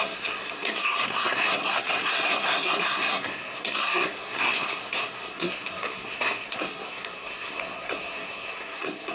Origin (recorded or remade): remade